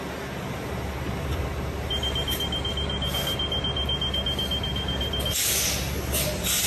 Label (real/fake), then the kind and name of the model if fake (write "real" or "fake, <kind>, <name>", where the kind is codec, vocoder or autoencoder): real